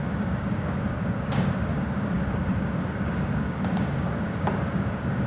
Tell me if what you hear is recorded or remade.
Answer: remade